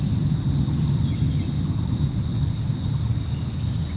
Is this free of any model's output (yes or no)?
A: yes